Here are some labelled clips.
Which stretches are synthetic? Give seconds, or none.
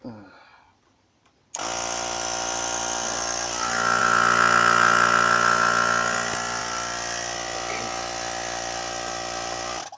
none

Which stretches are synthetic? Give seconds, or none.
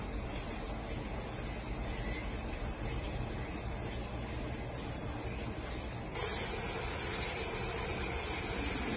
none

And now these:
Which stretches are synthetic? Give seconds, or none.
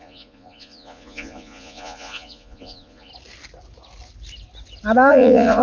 0.0-3.1; 5.1-5.6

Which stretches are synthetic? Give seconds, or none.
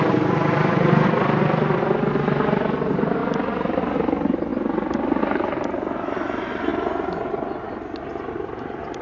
0.0-4.5; 5.2-6.7; 8.3-9.0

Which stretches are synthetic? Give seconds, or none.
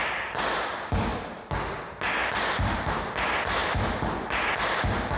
none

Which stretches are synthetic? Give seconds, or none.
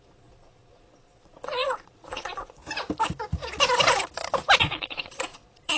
0.0-2.6; 4.6-5.8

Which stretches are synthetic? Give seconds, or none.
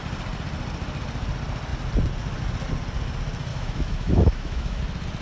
3.5-4.8